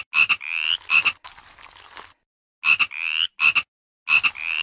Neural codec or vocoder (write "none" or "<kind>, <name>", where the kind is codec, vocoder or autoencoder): none